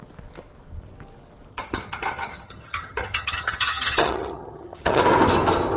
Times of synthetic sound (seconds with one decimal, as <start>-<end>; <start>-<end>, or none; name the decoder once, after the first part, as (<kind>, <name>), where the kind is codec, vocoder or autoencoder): 1.5-5.0 (vocoder, HiFi-GAN)